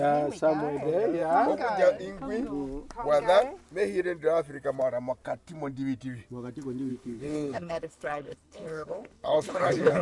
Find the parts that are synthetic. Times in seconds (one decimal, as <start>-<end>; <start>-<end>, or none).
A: 6.9-10.0